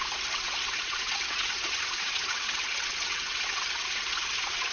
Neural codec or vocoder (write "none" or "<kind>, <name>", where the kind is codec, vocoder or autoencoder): vocoder, WaveNeXt